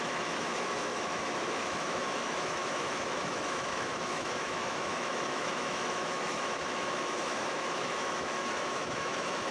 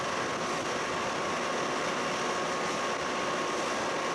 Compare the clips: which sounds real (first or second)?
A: second